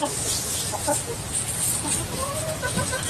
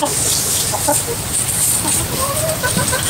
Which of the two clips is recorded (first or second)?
first